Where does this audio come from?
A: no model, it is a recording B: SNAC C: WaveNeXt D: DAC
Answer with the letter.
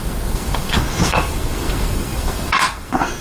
B